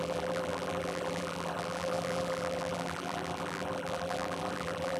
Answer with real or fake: fake